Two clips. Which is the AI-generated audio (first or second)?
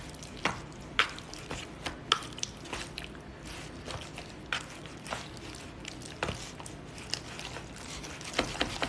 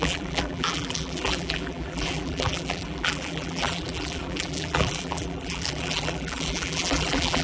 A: second